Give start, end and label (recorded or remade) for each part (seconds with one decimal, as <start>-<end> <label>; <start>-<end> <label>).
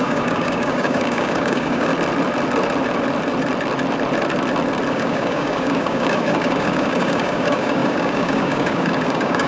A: 0.0-1.9 remade; 1.9-4.9 recorded; 4.9-9.5 remade